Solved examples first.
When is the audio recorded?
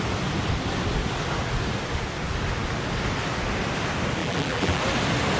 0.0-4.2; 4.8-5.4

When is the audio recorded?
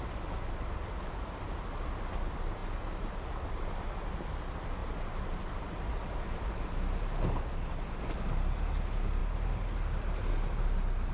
0.0-11.1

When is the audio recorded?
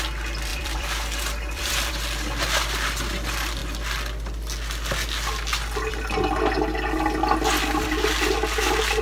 0.0-0.5; 1.9-9.0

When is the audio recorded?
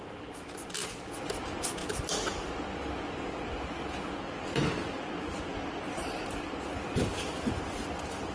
0.0-5.5; 6.3-8.3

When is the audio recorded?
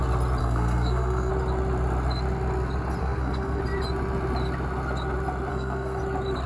0.0-0.4; 1.3-3.0; 3.6-5.5; 6.0-6.5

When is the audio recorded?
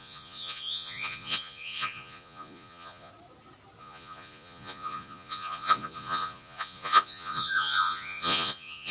3.1-3.8